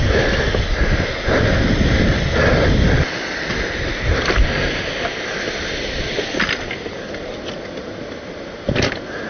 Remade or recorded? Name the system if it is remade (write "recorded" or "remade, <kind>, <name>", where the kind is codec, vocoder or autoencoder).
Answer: recorded